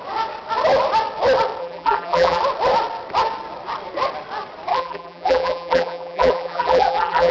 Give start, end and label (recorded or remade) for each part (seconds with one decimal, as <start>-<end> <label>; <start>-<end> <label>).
0.0-1.6 recorded; 1.6-2.4 remade; 2.4-4.7 recorded; 4.7-7.3 remade